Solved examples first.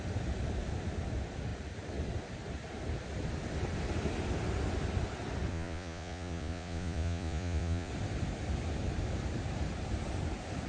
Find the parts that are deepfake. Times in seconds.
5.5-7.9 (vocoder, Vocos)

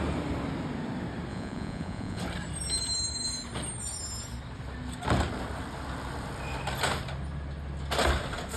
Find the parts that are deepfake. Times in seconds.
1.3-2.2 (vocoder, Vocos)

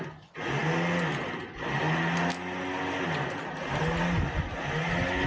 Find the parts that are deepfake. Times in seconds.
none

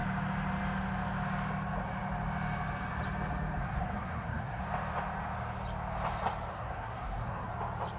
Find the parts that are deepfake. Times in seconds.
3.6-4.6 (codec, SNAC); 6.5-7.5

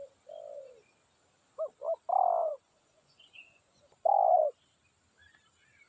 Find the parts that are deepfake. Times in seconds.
2.4-3.8 (vocoder, Vocos)